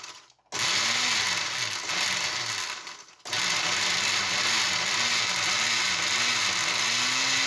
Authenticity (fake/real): real